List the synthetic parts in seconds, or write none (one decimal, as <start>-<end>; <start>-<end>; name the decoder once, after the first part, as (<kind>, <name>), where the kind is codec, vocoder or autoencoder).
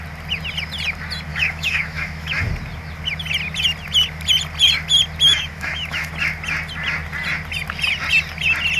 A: 1.3-2.4 (autoencoder, DAC-VAE); 5.3-6.1